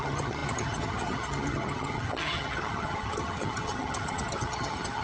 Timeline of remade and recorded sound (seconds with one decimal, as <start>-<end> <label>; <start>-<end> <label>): 0.0-5.0 remade